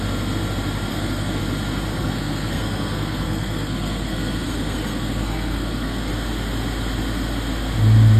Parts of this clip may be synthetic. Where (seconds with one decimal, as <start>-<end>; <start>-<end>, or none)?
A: 0.9-1.4; 1.9-6.1